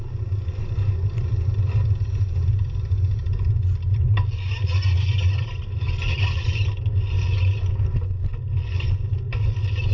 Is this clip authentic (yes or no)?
yes